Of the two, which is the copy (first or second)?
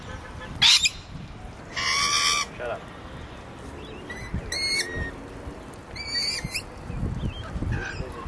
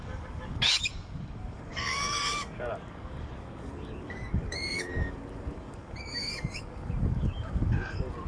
second